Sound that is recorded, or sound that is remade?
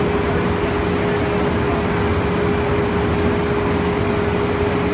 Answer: recorded